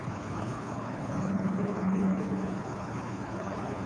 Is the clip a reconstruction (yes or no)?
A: yes